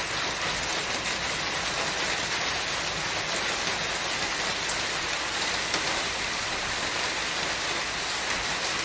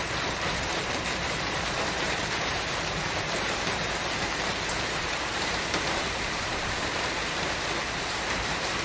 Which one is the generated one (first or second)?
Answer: second